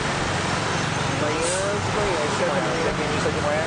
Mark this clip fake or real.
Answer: real